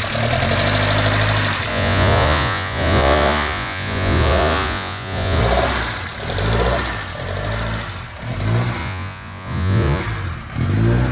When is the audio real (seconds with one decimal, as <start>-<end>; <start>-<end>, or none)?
0.0-1.7; 5.4-8.8; 10.0-11.1